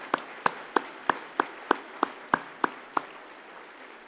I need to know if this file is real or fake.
real